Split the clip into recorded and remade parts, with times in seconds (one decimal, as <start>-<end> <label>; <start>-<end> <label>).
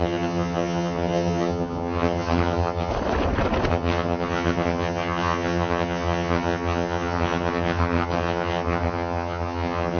0.0-2.9 remade; 2.9-3.7 recorded; 3.7-10.0 remade